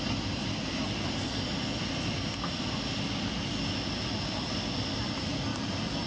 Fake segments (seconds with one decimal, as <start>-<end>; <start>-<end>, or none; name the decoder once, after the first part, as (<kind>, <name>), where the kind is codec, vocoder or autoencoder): none